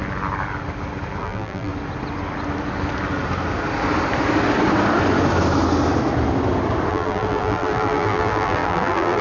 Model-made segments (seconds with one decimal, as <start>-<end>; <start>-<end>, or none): 1.2-1.7; 6.9-9.2